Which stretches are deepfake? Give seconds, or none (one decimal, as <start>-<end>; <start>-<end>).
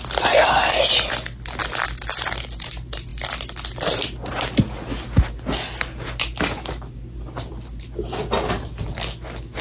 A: none